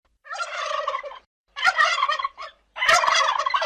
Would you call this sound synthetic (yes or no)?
yes